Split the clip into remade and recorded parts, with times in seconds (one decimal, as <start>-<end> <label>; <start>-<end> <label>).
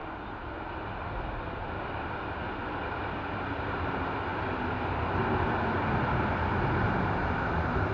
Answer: 0.0-7.9 recorded